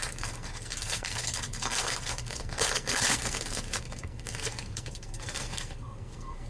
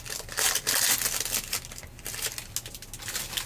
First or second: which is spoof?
first